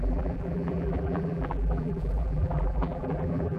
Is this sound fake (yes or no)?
yes